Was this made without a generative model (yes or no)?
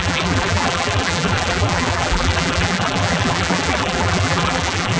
no